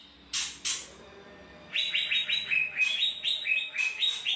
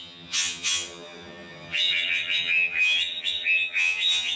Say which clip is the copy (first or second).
second